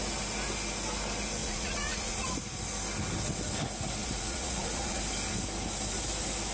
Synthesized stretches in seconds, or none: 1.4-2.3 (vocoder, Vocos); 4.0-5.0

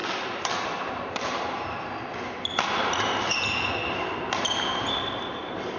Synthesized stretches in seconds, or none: none

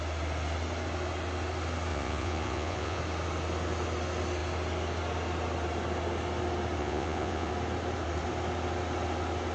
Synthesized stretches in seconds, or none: 1.9-3.0 (vocoder, Vocos); 6.8-7.5

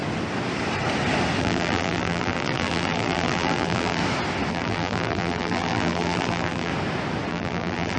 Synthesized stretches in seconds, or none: 1.4-4.0 (vocoder, BigVGAN v2); 4.5-6.7; 7.3-8.0

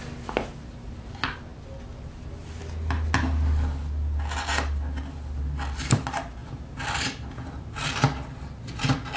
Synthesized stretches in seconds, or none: none